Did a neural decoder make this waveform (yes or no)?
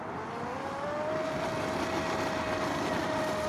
no